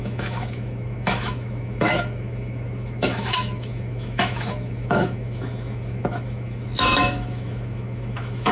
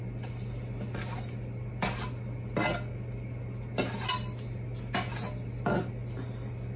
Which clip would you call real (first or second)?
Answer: second